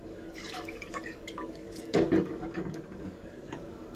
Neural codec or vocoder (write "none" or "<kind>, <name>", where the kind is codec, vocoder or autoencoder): codec, DAC